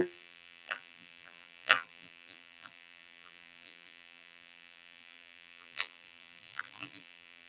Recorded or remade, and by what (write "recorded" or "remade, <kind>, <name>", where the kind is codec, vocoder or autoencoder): remade, vocoder, BigVGAN v2